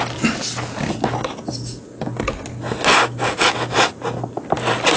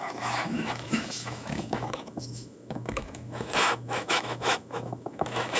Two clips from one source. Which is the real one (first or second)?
first